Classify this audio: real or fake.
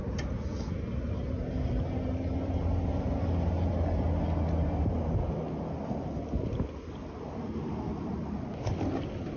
real